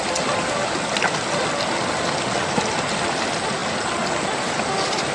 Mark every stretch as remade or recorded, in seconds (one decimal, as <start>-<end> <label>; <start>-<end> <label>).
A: 0.0-5.1 recorded